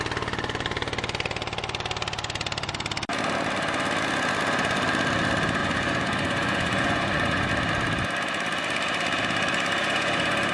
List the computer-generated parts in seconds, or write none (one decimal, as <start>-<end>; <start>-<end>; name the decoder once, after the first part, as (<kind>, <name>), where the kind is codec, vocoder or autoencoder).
5.6-7.5 (vocoder, Vocos); 9.8-10.5